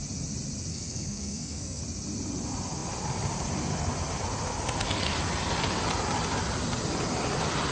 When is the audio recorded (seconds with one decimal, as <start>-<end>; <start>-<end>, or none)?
0.0-0.7; 1.8-7.7